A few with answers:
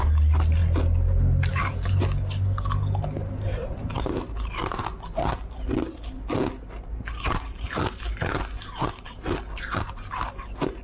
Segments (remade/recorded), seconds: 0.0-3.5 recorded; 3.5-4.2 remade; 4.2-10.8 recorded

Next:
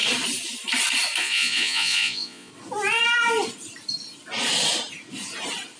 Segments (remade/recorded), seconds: 0.0-1.2 recorded; 1.2-2.5 remade; 2.5-5.8 recorded

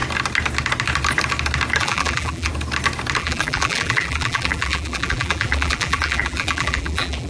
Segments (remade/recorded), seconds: 0.0-1.8 recorded; 1.8-2.5 remade; 2.5-3.2 recorded; 3.2-7.3 remade

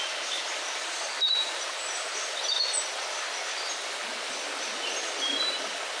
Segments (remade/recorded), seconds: 0.0-0.8 recorded; 0.8-2.3 remade; 2.3-6.0 recorded

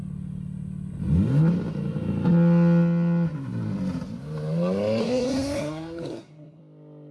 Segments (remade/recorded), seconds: 0.0-5.0 recorded; 5.0-6.6 remade; 6.6-7.1 recorded